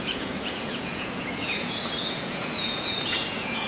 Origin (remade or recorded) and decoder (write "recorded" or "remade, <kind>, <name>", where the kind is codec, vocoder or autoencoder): remade, vocoder, Vocos